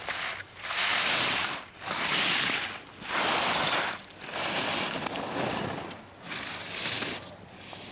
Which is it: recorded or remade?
recorded